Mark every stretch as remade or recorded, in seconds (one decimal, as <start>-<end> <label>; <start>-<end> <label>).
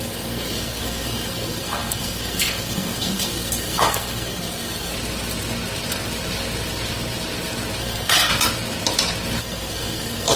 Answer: 0.0-4.9 remade; 4.9-7.8 recorded; 7.8-8.3 remade; 8.3-9.4 recorded; 9.4-10.4 remade